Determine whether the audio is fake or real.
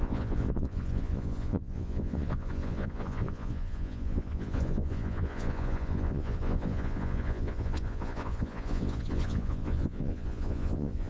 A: fake